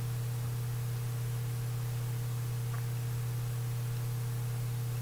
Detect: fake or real real